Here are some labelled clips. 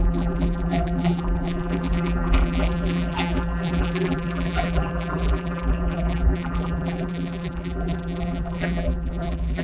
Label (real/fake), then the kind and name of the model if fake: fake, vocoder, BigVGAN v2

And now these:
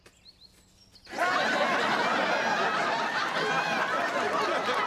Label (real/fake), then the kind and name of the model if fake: real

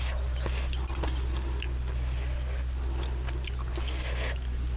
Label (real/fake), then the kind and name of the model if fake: real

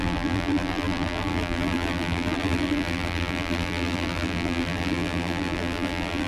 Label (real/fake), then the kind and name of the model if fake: fake, vocoder, BigVGAN v2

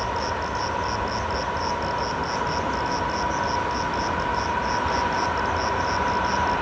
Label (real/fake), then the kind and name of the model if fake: real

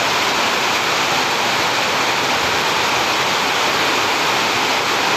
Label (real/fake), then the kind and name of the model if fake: real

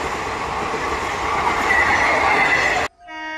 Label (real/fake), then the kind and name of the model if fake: real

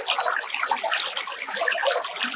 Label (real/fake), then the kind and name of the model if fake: real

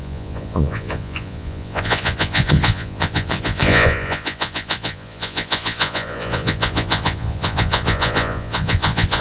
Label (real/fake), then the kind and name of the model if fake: fake, vocoder, Vocos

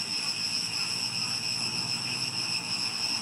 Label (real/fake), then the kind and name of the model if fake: real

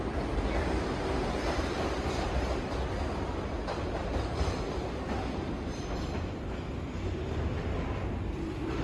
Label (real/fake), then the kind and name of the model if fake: real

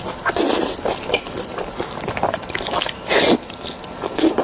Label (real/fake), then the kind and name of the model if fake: real